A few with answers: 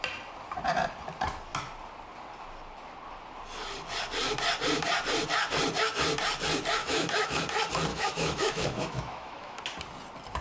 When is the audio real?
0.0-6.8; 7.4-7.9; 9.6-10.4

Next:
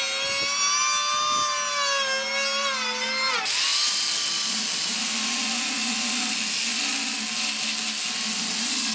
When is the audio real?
0.0-8.9

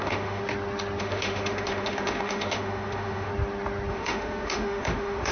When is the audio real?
0.4-1.0; 3.3-3.9